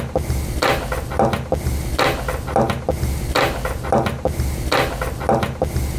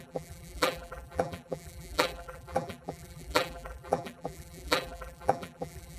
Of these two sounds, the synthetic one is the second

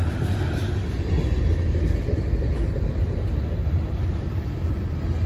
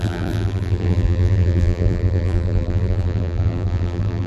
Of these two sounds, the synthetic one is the second